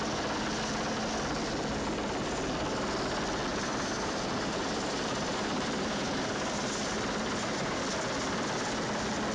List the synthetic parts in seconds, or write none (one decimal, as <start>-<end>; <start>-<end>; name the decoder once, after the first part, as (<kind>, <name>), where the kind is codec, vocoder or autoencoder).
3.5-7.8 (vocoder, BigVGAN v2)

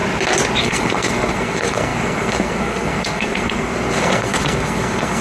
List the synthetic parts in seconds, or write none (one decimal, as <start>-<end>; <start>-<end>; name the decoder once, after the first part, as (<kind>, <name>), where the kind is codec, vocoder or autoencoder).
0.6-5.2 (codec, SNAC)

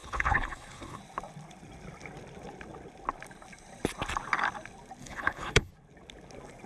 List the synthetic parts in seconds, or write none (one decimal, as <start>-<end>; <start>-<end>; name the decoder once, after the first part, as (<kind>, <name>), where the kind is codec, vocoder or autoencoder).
0.0-1.0 (codec, HILCodec); 5.0-5.7

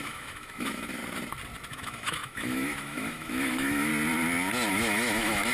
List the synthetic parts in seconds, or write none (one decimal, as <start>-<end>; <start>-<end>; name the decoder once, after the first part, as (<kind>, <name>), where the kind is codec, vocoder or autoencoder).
0.0-1.0 (autoencoder, DAC-VAE); 1.7-3.9; 4.7-5.5

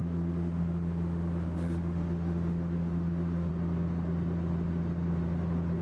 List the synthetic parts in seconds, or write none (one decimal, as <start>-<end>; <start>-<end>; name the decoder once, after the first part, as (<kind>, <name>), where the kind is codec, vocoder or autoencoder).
0.0-3.5 (autoencoder, DAC-VAE)

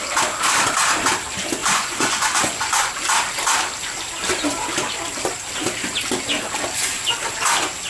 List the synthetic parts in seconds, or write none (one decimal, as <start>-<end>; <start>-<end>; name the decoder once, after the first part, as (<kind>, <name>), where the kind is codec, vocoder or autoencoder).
1.6-2.9 (vocoder, Vocos)